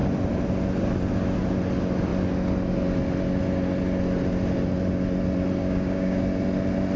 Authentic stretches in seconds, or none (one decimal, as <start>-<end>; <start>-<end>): 0.0-5.6; 6.2-7.0